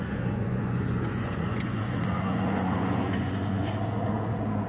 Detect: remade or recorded remade